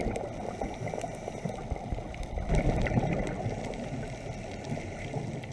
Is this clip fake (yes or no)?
no